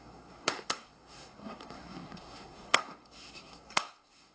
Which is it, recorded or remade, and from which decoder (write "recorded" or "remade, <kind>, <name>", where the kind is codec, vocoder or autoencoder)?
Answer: remade, codec, SNAC